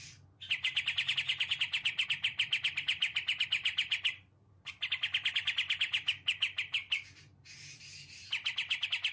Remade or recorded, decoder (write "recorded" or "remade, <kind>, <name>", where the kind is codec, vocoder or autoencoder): recorded